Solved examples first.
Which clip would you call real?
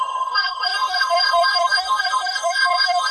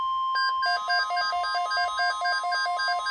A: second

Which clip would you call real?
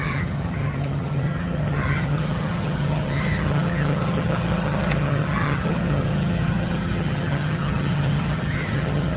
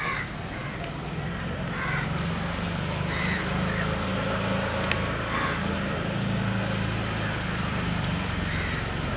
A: second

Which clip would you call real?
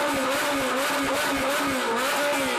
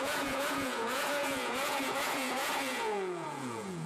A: first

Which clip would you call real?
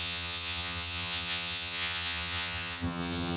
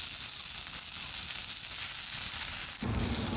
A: second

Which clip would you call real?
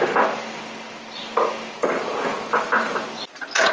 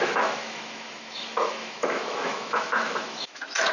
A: first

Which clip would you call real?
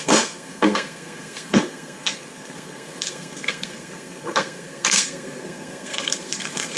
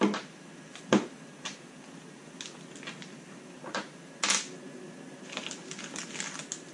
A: second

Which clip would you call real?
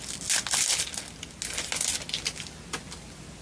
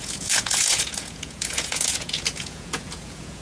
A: first